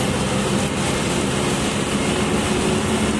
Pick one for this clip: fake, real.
real